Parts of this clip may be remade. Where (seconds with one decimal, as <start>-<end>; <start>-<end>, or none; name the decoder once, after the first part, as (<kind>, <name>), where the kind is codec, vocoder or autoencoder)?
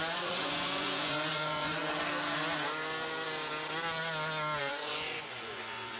0.0-1.8 (vocoder, Vocos); 4.6-6.0